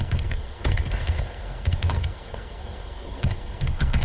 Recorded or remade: remade